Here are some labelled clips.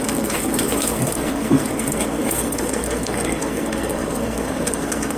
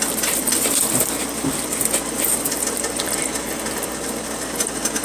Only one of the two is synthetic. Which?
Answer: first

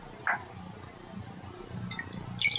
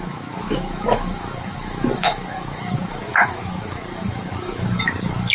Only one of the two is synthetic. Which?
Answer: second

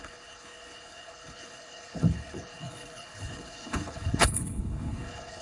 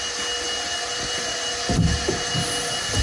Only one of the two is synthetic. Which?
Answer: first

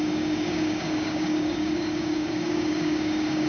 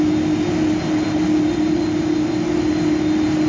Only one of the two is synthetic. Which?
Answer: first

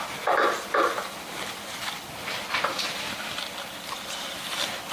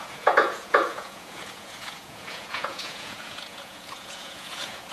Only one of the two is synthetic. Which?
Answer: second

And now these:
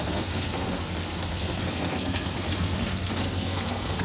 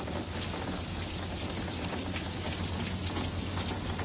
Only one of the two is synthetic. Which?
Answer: first